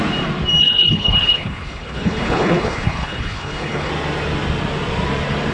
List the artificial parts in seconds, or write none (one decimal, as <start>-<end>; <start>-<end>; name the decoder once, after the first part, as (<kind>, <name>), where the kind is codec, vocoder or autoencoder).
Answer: 0.6-3.9 (codec, HILCodec)